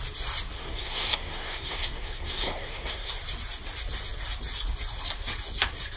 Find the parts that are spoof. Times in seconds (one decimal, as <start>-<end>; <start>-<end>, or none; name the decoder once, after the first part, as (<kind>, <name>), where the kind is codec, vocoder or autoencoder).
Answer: 0.6-3.1 (codec, SNAC)